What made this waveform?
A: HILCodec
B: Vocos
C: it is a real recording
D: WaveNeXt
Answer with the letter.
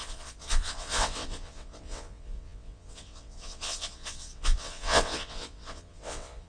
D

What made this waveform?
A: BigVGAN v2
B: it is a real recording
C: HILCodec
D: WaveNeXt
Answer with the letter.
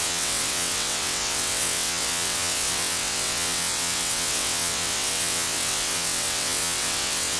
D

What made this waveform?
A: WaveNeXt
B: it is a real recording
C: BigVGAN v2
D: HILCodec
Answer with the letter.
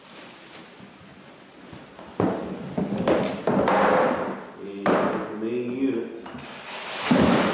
B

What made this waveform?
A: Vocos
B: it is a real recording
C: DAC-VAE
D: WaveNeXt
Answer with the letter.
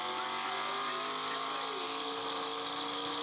B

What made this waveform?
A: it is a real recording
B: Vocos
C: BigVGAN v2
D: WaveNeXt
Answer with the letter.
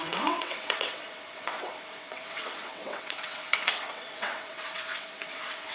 D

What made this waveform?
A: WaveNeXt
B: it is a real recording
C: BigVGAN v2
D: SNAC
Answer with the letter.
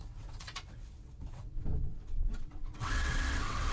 A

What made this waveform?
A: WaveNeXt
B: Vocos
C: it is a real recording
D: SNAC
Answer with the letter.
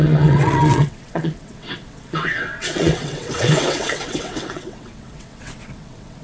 A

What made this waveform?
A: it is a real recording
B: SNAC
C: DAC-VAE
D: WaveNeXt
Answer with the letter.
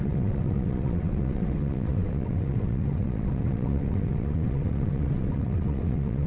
D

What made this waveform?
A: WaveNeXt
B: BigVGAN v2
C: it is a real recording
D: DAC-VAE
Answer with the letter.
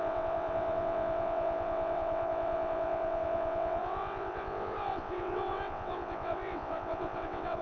A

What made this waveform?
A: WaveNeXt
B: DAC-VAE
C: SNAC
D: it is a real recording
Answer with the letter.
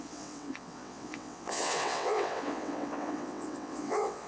A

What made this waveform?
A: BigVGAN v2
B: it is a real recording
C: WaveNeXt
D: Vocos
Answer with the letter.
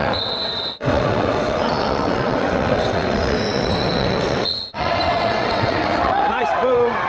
C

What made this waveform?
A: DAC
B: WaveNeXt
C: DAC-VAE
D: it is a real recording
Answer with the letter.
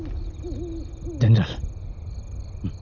D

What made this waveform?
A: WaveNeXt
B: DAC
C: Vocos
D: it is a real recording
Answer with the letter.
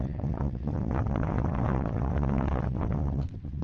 A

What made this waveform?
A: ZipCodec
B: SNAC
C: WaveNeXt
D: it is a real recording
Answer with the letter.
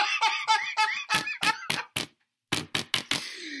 D